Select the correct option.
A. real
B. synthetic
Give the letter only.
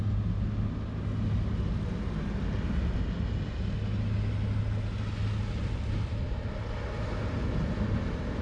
A